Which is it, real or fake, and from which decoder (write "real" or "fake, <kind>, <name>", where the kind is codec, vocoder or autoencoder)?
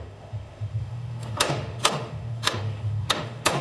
fake, autoencoder, DAC-VAE